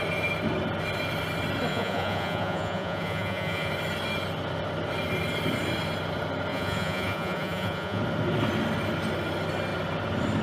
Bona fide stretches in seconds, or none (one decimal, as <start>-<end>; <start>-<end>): 0.0-1.7; 3.7-6.5; 8.0-10.4